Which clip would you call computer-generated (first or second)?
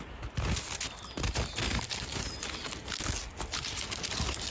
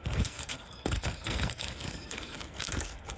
second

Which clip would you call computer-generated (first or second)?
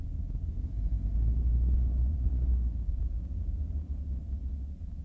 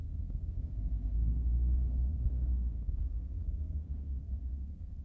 second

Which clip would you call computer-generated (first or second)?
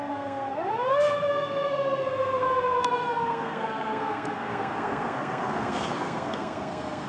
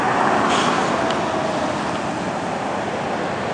first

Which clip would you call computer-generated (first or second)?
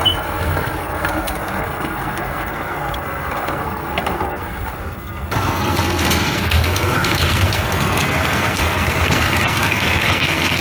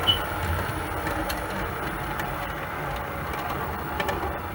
first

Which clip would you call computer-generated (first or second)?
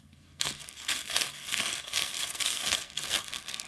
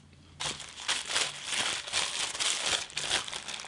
first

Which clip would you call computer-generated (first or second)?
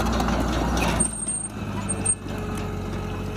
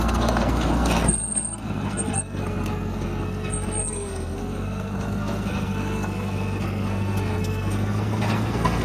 second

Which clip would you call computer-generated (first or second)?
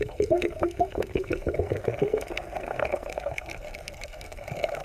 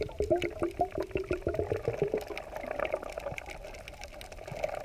first